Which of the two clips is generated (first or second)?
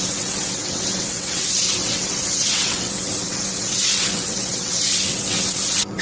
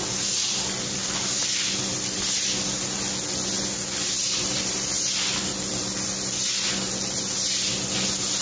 first